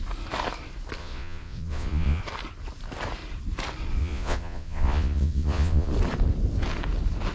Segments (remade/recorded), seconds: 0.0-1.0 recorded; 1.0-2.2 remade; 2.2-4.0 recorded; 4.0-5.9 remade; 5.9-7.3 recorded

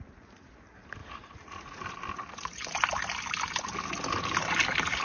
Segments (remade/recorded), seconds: 0.0-1.0 recorded; 1.0-1.8 remade; 1.8-5.0 recorded

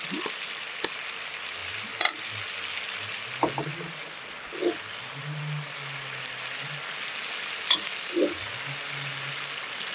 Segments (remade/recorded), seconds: 0.0-9.9 recorded